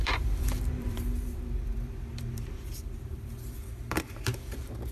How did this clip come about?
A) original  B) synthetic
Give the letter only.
B